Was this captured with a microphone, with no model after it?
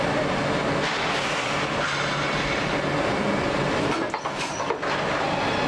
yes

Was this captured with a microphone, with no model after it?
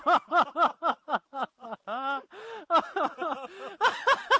yes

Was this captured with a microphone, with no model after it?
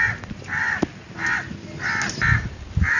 yes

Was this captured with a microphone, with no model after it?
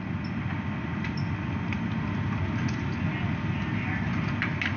yes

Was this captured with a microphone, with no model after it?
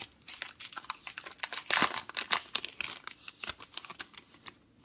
yes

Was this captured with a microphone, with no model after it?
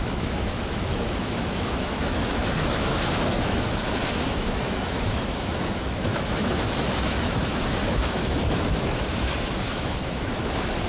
no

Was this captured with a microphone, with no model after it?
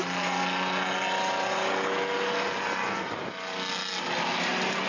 yes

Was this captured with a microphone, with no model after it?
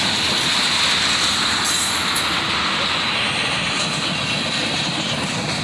yes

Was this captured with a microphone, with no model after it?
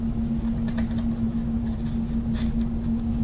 yes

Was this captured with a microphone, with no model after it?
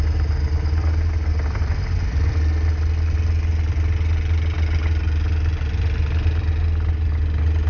yes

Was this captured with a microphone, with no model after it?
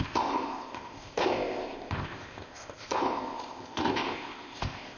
no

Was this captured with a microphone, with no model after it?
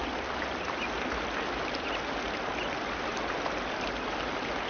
yes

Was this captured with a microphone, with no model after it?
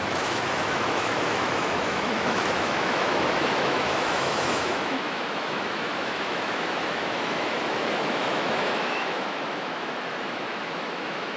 no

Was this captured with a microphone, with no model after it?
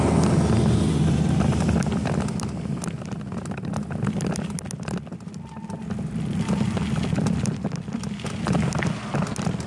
yes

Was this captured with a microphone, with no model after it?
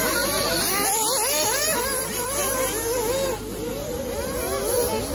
yes